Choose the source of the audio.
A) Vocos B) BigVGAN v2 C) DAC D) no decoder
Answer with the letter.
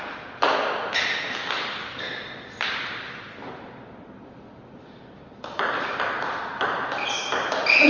D